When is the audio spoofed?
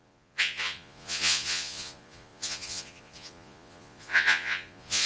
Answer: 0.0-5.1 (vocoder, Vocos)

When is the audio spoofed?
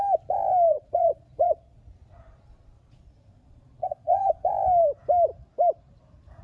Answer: 0.7-4.5 (vocoder, Vocos)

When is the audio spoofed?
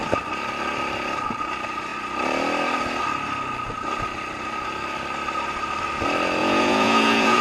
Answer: 6.4-7.4 (vocoder, Vocos)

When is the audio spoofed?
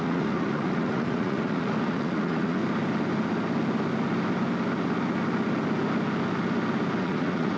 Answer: 0.0-2.6 (vocoder, Vocos); 7.0-7.6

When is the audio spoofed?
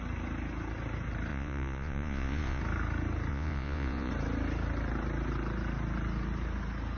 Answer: 1.3-2.6 (vocoder, Vocos); 3.3-4.1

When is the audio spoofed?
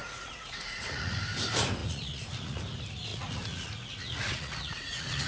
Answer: 0.0-1.2 (vocoder, Vocos); 1.8-2.6; 3.1-5.3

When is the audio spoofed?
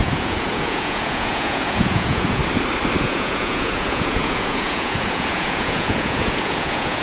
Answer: 0.0-2.4 (vocoder, Vocos); 3.0-7.0